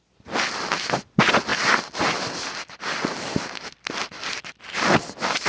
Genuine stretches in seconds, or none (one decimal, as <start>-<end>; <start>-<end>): 0.0-5.5